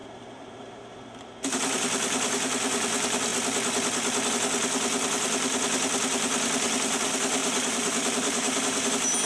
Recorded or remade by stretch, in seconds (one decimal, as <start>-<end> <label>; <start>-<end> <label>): 0.0-1.3 remade; 1.3-7.4 recorded; 7.4-8.9 remade; 8.9-9.3 recorded

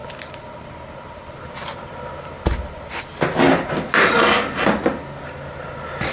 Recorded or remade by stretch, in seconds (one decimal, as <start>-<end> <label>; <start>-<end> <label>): 0.0-6.1 recorded